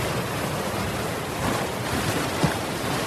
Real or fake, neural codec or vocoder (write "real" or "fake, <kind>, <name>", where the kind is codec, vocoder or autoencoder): real